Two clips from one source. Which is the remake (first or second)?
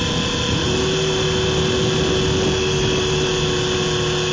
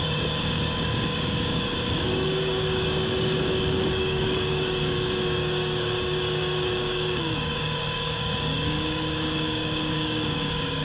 second